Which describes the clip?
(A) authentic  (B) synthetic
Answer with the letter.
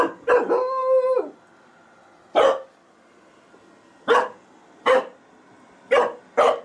A